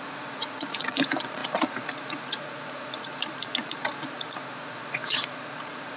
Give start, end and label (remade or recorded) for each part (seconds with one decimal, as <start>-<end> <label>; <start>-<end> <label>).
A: 0.0-6.0 remade